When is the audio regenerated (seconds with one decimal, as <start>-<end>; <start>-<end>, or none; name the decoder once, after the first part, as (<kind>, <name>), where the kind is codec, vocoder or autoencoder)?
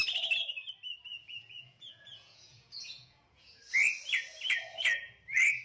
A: 1.1-3.6 (vocoder, Vocos)